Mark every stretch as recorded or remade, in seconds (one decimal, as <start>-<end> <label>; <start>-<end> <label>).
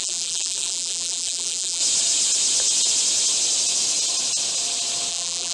0.0-1.8 remade; 1.8-5.1 recorded; 5.1-5.5 remade